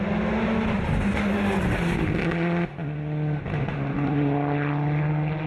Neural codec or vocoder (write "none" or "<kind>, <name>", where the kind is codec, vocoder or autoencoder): none